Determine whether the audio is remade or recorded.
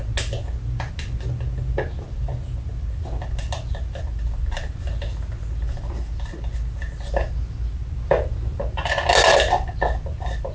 recorded